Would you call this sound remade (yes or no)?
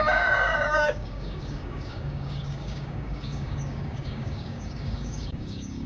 yes